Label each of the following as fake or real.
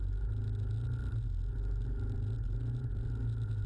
real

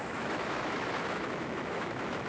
fake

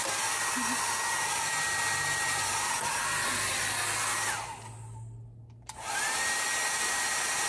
real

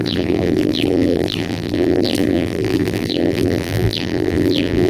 fake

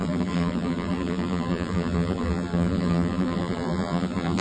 fake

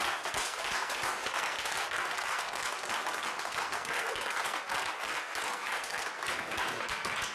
fake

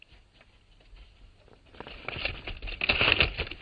real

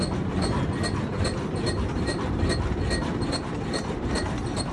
real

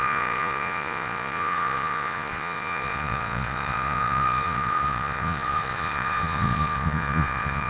fake